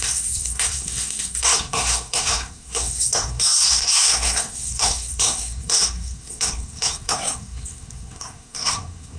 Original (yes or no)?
no